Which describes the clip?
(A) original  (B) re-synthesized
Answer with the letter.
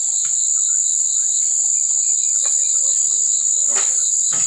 B